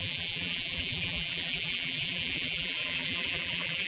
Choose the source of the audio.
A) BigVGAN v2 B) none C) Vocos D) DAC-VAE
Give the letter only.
A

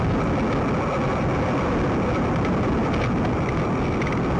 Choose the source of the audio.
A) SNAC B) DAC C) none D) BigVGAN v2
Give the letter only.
C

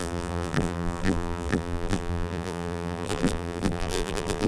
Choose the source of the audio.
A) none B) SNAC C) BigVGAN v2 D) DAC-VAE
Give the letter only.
C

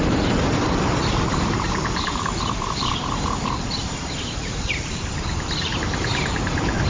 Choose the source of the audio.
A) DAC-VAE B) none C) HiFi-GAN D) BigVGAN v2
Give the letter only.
D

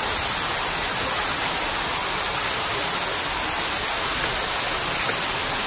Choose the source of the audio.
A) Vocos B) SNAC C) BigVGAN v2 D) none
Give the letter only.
D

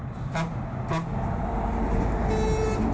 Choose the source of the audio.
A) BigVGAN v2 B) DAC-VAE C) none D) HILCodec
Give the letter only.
C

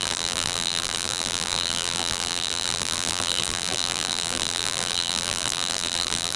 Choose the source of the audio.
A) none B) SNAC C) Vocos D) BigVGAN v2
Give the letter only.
D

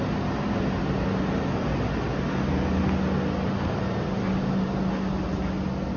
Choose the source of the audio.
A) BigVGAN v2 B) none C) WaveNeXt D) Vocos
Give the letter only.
B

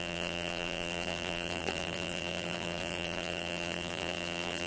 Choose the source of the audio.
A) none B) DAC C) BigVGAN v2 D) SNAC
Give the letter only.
C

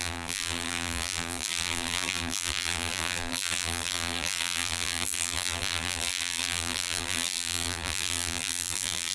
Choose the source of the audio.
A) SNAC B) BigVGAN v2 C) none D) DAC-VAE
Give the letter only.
B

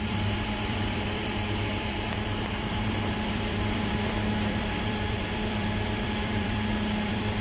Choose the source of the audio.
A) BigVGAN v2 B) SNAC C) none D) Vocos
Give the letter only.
A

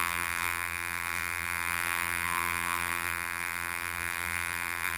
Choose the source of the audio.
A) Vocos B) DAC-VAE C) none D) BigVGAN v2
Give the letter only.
D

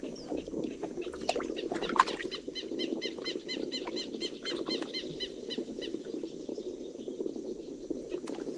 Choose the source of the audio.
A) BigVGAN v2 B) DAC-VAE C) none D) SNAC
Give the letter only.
C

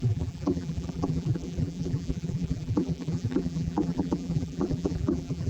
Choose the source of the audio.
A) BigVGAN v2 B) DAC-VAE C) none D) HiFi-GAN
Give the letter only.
A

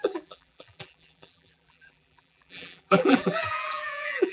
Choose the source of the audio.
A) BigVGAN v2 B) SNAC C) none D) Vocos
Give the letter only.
A